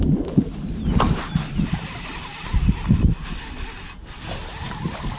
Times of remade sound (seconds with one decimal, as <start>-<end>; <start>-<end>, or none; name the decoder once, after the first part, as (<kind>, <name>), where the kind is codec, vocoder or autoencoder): none